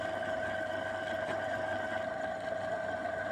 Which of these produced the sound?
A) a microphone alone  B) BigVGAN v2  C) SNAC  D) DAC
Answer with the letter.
B